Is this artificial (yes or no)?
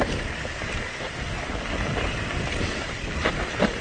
no